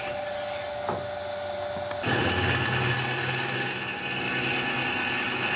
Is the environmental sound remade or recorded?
recorded